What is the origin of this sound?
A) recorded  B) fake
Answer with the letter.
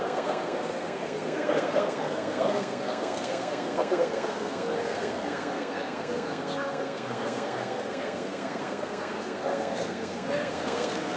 B